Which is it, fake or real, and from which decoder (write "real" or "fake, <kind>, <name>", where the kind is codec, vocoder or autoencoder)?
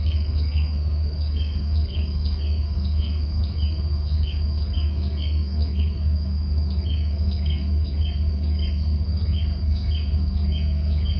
fake, codec, SNAC